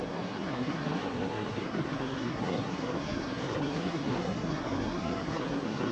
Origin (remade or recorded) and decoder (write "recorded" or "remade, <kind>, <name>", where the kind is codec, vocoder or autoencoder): remade, codec, SNAC